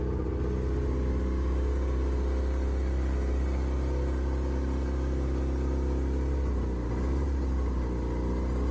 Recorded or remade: recorded